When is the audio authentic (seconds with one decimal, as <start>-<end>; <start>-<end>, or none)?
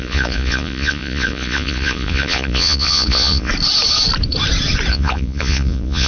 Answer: 3.5-4.9